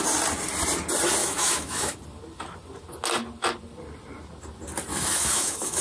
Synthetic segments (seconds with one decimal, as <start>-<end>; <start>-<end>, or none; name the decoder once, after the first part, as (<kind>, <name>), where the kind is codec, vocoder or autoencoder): 1.2-2.0 (autoencoder, DAC-VAE); 4.9-5.8